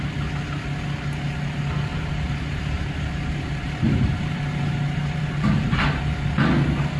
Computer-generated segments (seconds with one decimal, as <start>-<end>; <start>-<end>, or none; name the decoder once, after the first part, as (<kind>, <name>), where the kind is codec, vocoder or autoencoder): 1.9-5.9 (vocoder, BigVGAN v2)